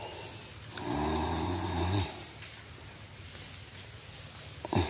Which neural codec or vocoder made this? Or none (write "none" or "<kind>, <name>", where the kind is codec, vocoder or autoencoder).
none